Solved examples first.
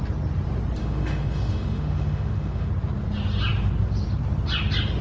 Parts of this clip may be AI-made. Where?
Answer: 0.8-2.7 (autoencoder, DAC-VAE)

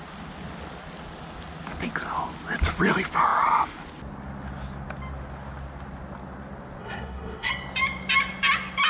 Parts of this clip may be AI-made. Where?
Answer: 6.8-7.5 (codec, SNAC)

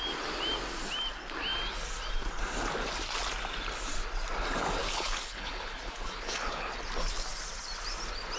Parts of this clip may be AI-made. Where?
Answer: 4.8-6.7 (codec, HILCodec)

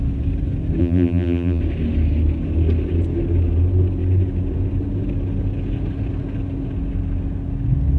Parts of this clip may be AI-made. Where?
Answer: 0.8-1.6 (vocoder, BigVGAN v2)

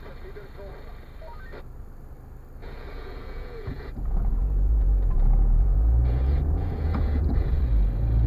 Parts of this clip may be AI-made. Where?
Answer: 2.6-7.6 (vocoder, Vocos)